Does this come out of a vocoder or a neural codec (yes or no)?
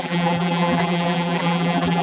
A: yes